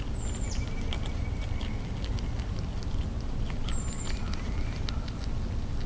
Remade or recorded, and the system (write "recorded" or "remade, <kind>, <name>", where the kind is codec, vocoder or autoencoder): recorded